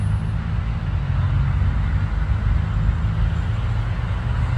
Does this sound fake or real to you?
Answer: real